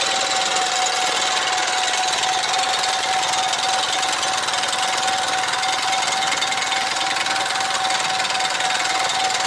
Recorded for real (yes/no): yes